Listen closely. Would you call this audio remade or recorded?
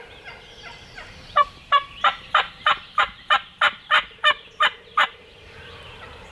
remade